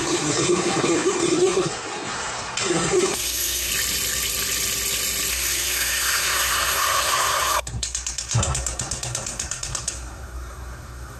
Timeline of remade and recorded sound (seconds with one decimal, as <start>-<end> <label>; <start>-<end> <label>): 0.0-3.7 remade; 3.7-5.3 recorded; 5.3-11.2 remade